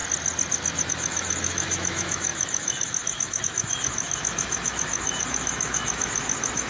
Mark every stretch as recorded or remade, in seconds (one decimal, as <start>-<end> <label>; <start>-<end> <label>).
0.0-0.9 recorded; 0.9-6.7 remade